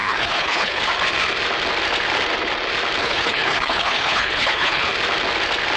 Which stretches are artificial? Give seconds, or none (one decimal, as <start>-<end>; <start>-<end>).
0.0-0.8; 3.0-4.9

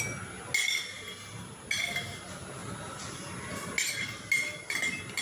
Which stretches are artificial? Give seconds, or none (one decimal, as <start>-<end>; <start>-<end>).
none

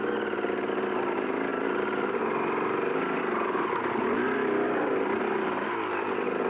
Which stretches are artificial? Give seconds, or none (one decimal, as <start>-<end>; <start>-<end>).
none

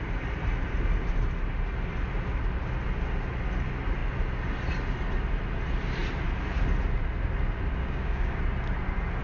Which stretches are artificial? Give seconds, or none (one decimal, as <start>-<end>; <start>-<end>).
7.8-8.4